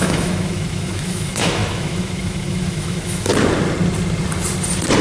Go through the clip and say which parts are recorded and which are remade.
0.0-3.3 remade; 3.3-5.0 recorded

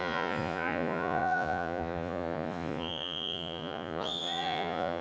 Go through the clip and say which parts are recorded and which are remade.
0.0-5.0 remade

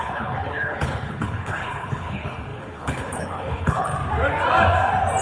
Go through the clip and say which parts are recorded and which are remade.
0.0-3.9 remade; 3.9-5.2 recorded

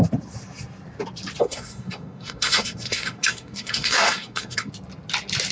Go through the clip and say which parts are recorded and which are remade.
0.0-1.4 recorded; 1.4-4.7 remade; 4.7-5.5 recorded

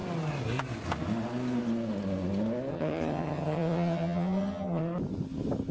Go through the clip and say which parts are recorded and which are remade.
0.0-2.7 recorded; 2.7-4.8 remade; 4.8-5.7 recorded

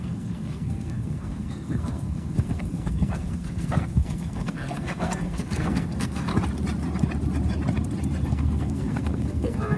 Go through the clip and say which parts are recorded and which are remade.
0.0-6.3 remade; 6.3-8.3 recorded; 8.3-9.8 remade

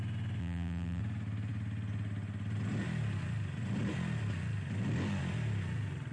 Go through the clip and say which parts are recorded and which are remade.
0.0-0.4 recorded; 0.4-1.0 remade; 1.0-6.1 recorded